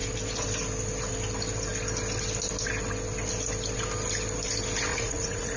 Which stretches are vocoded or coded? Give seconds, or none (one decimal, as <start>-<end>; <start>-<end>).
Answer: 4.9-5.6